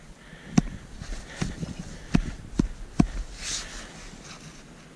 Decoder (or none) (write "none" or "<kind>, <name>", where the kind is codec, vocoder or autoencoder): none